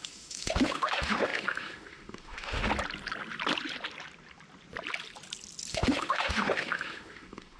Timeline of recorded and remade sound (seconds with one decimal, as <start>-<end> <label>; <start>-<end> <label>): 0.0-2.7 remade; 2.7-5.7 recorded; 5.7-7.6 remade